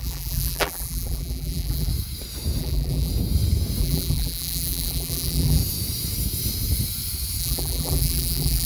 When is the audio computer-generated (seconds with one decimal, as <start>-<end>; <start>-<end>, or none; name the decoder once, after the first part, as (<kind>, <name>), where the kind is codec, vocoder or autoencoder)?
0.0-1.9 (vocoder, BigVGAN v2); 2.6-3.1; 3.8-5.6; 7.4-8.7